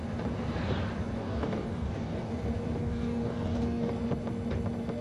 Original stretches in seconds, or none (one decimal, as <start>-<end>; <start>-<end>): 0.0-1.2; 2.3-2.8; 3.9-5.0